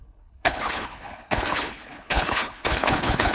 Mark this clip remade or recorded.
remade